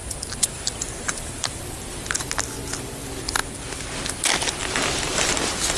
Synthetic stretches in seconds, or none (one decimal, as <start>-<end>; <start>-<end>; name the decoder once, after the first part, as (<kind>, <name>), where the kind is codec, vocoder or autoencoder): 0.0-2.2 (vocoder, BigVGAN v2)